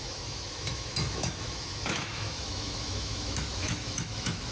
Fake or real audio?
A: fake